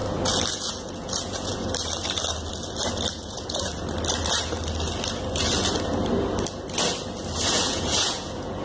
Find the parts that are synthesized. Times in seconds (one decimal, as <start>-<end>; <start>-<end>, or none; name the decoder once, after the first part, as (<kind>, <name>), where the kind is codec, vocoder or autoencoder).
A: 0.5-1.5 (vocoder, Vocos); 3.1-3.7; 7.5-8.6